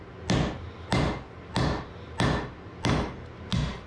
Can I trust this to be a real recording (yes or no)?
yes